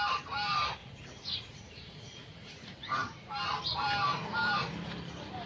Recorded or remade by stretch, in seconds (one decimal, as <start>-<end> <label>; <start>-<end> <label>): 0.0-0.8 recorded; 0.8-3.3 remade; 3.3-5.5 recorded